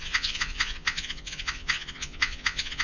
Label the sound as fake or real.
fake